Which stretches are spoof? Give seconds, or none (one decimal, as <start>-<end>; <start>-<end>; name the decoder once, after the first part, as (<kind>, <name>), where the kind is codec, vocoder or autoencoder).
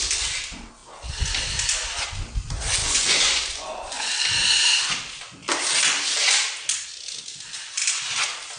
2.8-4.1 (vocoder, Vocos)